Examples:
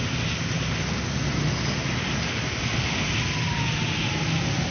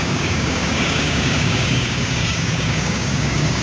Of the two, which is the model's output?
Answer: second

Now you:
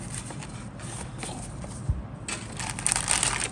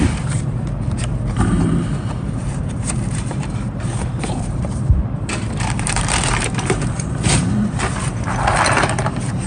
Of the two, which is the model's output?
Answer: second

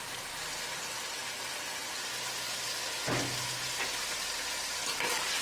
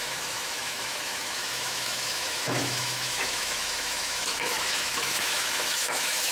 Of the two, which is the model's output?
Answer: second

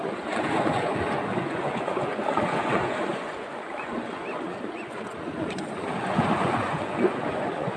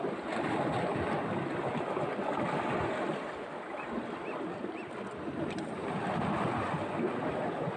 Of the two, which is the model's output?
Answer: first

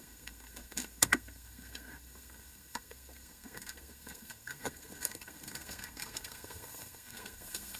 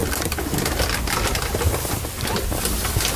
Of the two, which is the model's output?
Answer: first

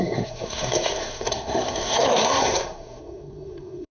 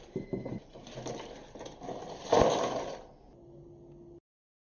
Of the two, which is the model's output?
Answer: first